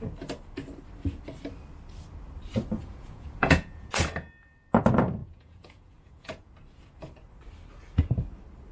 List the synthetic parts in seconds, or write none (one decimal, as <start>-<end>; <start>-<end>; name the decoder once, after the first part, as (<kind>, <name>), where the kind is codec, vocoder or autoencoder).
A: 2.8-3.9 (vocoder, Vocos); 5.2-6.5